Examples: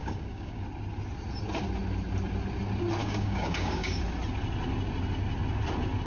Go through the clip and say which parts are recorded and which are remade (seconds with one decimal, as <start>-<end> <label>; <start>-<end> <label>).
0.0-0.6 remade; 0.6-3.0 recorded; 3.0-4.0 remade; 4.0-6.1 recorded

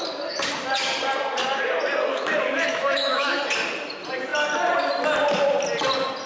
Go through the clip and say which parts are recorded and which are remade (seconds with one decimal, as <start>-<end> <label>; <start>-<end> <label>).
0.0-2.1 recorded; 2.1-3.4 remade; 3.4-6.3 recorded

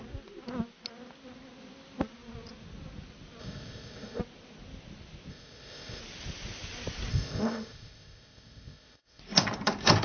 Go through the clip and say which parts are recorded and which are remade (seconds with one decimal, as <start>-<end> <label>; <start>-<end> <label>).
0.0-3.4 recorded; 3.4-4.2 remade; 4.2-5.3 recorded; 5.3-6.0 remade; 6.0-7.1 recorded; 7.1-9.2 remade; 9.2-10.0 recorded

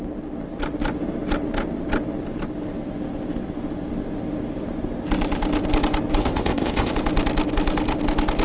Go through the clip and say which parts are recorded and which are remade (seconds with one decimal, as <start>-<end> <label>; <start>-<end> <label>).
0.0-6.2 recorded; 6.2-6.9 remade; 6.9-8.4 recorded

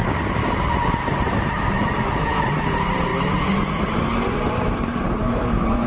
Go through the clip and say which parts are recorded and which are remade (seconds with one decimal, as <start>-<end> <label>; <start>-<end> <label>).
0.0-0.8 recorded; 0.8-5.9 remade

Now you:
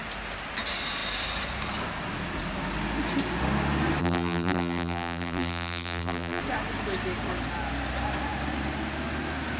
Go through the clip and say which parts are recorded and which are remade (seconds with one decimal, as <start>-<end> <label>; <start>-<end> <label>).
0.0-4.0 recorded; 4.0-6.4 remade; 6.4-9.6 recorded

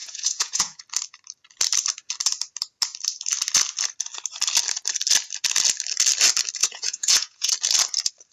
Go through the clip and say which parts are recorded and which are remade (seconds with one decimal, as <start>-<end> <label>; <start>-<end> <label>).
0.0-0.8 remade; 0.8-6.6 recorded; 6.6-7.5 remade; 7.5-8.3 recorded